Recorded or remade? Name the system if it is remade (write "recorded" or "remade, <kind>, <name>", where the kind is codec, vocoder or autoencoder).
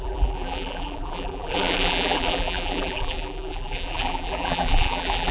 remade, vocoder, BigVGAN v2